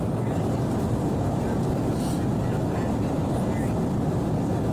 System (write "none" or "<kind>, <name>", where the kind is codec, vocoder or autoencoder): none